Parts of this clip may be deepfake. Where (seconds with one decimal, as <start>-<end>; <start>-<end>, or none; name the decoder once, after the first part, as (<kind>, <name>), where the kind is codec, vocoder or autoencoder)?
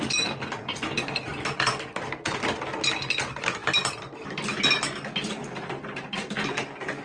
none